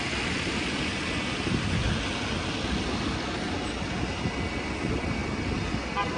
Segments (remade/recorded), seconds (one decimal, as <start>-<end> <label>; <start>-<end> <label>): 0.0-6.2 recorded